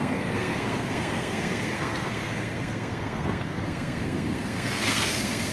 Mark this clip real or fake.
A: fake